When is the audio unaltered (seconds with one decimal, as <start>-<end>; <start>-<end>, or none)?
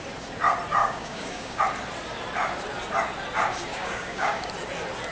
0.0-0.8; 1.6-3.7; 4.5-5.1